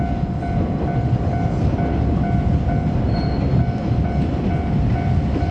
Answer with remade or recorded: recorded